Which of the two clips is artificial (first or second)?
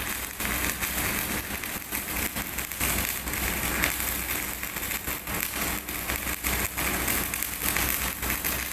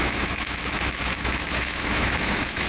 second